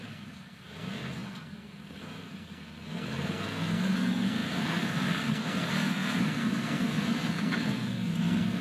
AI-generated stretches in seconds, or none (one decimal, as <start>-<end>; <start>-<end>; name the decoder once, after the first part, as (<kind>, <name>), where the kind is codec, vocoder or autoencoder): 0.0-8.6 (codec, SNAC)

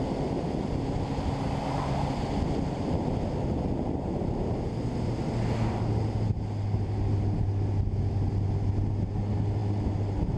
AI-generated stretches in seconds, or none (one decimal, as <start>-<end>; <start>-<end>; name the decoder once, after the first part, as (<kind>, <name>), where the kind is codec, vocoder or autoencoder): none